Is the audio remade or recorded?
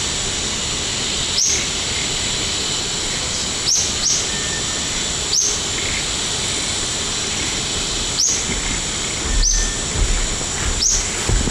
recorded